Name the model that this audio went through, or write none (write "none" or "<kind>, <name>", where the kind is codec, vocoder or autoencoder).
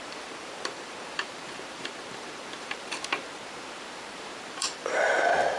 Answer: vocoder, BigVGAN v2